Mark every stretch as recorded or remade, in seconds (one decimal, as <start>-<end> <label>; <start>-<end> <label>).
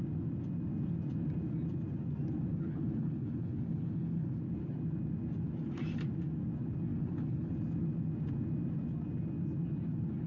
0.0-2.5 recorded; 2.5-4.4 remade; 4.4-6.9 recorded; 6.9-7.5 remade; 7.5-10.3 recorded